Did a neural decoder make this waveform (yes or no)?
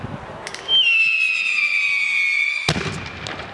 no